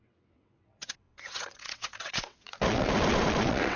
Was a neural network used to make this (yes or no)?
yes